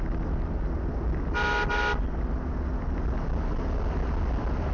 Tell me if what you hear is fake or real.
real